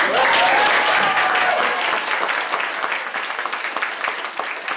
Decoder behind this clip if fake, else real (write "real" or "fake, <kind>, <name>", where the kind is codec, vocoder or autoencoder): real